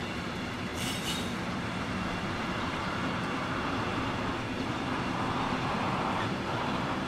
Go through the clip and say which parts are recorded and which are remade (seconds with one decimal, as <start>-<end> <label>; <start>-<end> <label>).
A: 0.0-3.9 remade; 3.9-5.4 recorded; 5.4-7.1 remade